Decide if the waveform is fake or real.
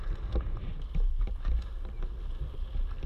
real